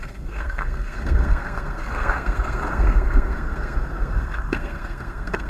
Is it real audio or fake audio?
fake